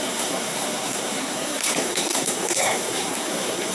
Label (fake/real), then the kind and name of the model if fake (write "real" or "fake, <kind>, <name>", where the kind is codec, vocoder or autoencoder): fake, codec, SNAC